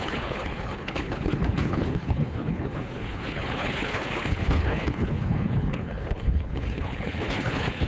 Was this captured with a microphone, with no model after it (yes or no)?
no